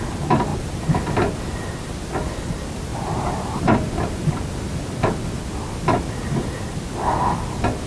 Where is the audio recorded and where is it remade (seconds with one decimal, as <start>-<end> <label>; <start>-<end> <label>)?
0.0-0.5 recorded; 0.5-1.1 remade; 1.1-2.9 recorded; 2.9-5.4 remade; 5.4-7.9 recorded